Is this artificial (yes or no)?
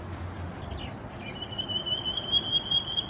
no